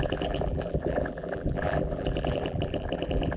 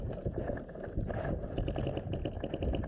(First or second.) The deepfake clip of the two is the first